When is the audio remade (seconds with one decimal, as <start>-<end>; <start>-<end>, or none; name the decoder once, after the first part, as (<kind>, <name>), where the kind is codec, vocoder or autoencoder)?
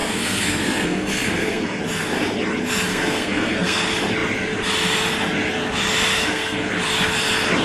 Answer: 0.0-1.8 (codec, SNAC); 2.9-3.8; 6.1-6.7